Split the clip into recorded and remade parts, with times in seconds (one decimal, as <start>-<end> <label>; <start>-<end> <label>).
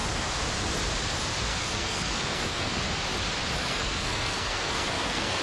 0.0-1.5 recorded; 1.5-2.8 remade; 2.8-3.6 recorded; 3.6-5.4 remade